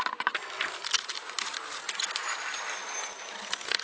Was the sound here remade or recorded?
recorded